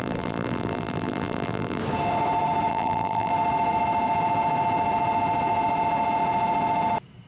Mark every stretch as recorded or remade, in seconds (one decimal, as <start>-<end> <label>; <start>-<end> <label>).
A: 0.0-1.8 remade; 1.8-2.7 recorded; 2.7-3.3 remade; 3.3-7.3 recorded